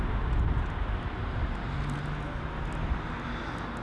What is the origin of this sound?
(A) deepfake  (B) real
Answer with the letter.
B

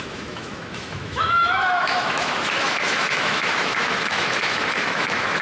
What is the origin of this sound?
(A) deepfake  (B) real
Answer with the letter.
A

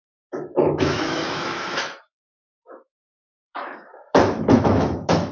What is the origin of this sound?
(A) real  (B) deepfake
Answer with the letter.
B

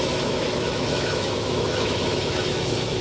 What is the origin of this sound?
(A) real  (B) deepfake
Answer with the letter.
B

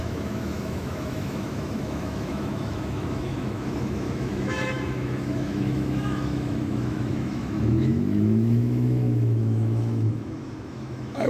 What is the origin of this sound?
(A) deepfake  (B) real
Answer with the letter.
A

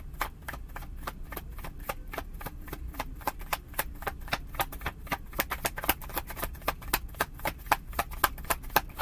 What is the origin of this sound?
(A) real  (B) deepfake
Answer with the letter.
A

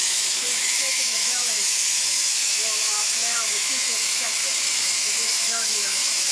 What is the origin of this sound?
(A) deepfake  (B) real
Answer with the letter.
A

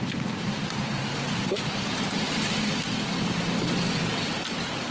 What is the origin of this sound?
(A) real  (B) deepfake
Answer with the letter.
A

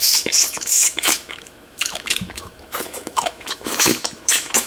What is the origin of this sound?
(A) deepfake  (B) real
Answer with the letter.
A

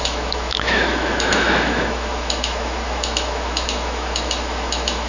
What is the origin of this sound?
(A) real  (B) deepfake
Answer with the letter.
B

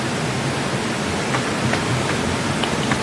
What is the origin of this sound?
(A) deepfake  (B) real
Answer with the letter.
B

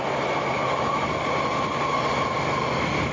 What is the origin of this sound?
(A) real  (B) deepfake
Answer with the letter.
A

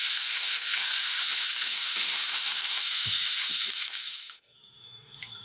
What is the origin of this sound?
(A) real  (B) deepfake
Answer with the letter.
B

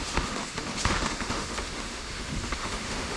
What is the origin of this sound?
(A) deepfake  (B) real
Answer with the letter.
A